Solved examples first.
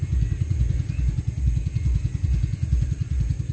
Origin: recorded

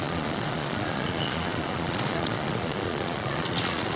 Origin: remade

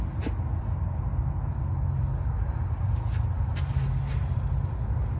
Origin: recorded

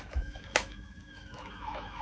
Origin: remade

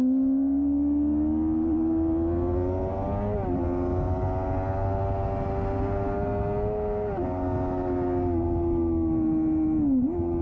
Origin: recorded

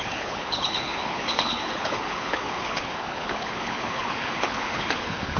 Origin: remade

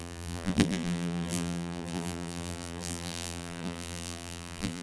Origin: remade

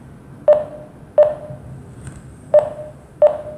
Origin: recorded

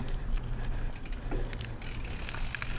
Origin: recorded